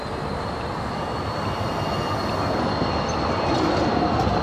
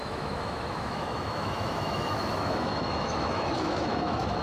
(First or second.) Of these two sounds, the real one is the first